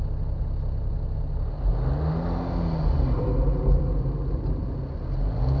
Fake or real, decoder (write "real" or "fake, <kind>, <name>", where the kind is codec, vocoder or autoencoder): real